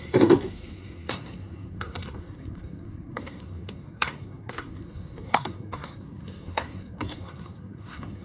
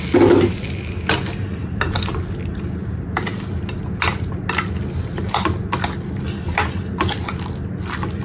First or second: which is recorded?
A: second